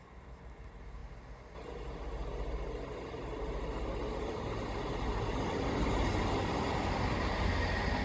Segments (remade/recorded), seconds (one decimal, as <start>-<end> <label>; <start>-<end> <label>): 0.0-8.0 recorded

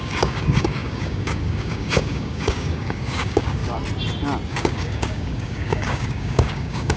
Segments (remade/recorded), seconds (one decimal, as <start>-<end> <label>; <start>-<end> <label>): 0.0-3.6 remade; 3.6-4.5 recorded; 4.5-7.0 remade